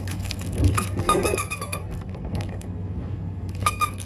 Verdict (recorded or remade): remade